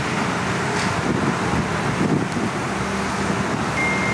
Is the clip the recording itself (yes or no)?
yes